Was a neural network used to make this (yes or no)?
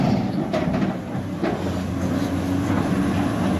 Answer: no